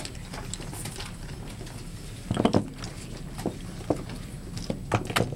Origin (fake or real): real